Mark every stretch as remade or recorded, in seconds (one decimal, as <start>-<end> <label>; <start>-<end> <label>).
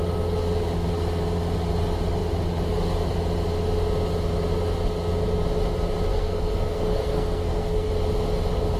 0.0-6.1 recorded; 6.1-7.9 remade; 7.9-8.8 recorded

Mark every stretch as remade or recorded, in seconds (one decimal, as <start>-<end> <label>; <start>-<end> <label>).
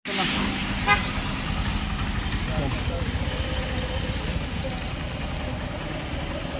0.0-6.6 recorded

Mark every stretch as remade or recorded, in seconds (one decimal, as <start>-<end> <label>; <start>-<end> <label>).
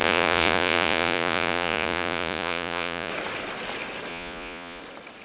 0.0-3.1 remade; 3.1-4.1 recorded; 4.1-4.8 remade; 4.8-5.2 recorded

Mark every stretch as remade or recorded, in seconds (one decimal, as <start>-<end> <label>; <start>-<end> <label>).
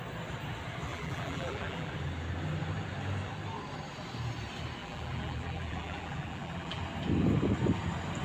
0.0-0.9 recorded; 0.9-1.9 remade; 1.9-4.8 recorded; 4.8-6.8 remade; 6.8-8.2 recorded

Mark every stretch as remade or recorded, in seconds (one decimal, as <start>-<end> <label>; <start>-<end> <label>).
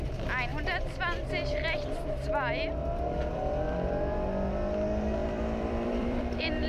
0.0-5.2 recorded; 5.2-6.7 remade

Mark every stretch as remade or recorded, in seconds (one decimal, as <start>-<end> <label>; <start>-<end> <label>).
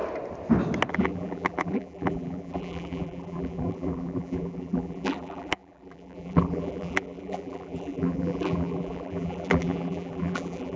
0.0-0.9 recorded; 0.9-10.8 remade